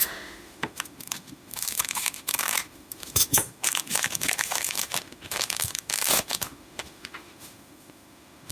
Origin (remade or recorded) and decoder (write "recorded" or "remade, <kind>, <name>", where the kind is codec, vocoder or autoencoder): remade, autoencoder, DAC-VAE